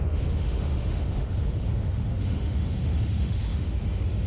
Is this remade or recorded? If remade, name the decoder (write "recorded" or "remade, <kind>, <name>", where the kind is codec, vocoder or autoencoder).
remade, autoencoder, DAC-VAE